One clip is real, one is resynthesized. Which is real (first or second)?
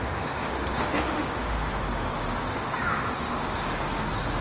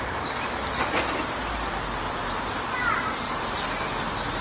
second